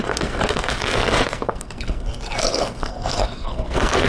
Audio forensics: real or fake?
fake